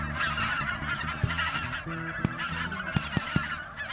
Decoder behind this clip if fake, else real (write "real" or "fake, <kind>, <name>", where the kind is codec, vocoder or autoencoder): real